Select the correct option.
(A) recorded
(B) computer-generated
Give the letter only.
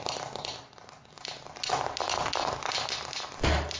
A